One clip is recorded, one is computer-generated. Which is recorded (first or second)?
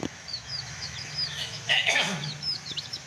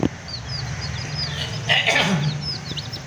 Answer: second